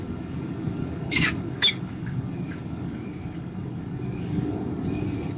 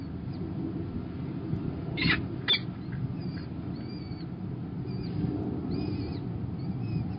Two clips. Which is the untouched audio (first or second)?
second